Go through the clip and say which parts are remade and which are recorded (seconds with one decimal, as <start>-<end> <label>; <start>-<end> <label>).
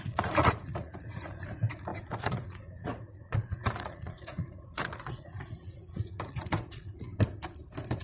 0.0-7.1 remade; 7.1-8.0 recorded